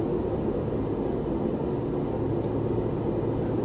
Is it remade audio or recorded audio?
recorded